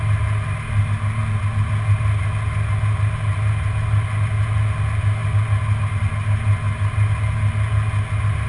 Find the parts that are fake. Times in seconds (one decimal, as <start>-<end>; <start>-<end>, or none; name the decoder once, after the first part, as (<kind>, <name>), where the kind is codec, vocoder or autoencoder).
none